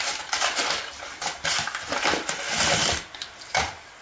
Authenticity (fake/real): real